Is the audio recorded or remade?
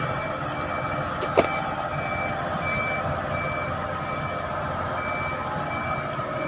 recorded